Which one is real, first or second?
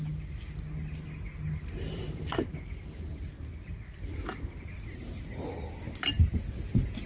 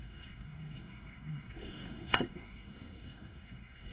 first